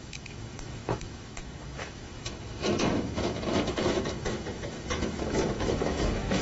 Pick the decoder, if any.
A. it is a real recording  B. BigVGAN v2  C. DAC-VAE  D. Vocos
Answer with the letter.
C